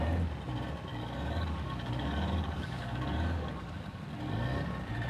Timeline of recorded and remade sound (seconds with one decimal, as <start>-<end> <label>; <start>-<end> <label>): 0.0-0.9 recorded; 0.9-4.0 remade; 4.0-5.1 recorded

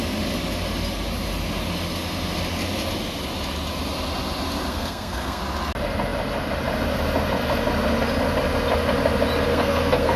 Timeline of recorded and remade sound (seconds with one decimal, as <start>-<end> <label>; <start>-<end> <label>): 0.0-4.7 recorded; 4.7-5.4 remade; 5.4-9.5 recorded; 9.5-10.2 remade